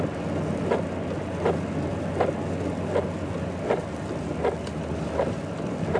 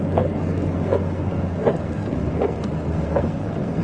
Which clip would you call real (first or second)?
first